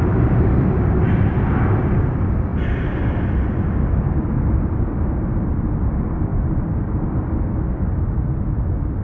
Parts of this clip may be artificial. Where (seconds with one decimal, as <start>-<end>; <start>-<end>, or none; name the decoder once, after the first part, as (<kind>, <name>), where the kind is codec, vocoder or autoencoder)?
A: 0.0-9.0 (vocoder, BigVGAN v2)